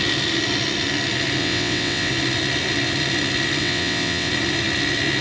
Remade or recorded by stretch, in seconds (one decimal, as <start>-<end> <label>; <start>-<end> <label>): 0.0-1.4 recorded; 1.4-2.1 remade; 2.1-3.6 recorded; 3.6-4.3 remade; 4.3-5.2 recorded